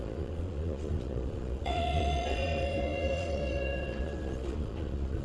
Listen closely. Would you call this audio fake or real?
fake